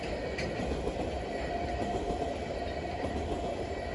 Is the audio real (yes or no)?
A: yes